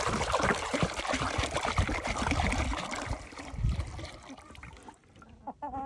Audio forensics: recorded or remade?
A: remade